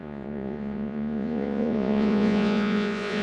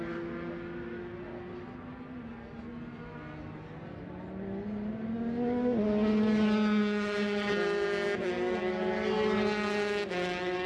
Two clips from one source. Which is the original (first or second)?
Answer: second